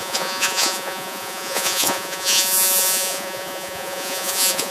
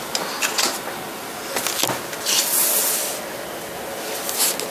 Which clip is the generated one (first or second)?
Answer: first